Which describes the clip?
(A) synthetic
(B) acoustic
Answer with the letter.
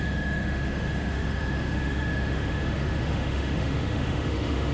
A